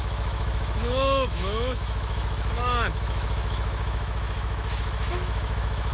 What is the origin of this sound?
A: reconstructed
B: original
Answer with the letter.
A